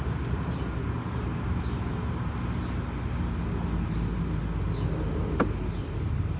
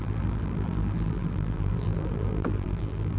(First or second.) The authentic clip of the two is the first